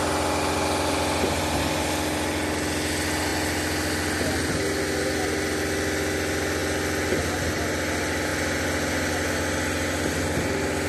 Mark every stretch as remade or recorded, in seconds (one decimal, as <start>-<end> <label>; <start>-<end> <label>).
0.0-10.9 recorded